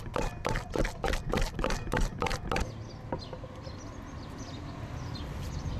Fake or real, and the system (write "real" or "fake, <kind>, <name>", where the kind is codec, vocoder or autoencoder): real